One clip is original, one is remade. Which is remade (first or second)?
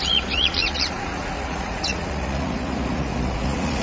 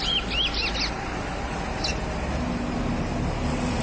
first